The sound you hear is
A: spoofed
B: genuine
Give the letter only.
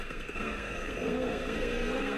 A